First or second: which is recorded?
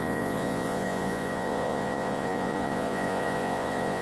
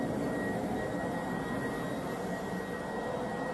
second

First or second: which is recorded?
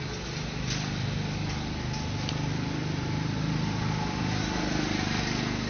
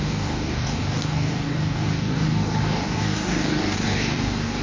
first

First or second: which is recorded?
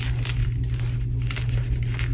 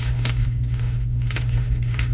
first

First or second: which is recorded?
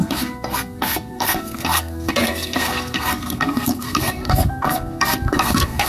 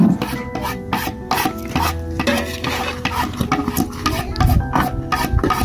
second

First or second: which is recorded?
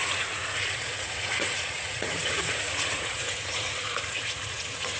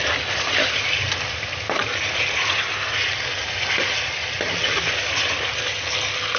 second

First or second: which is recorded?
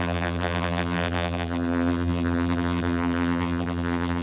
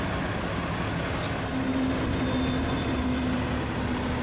second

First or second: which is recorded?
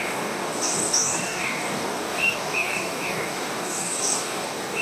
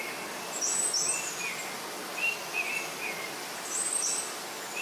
second